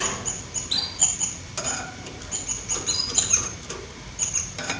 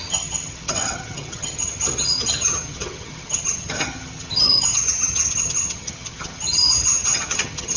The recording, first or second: first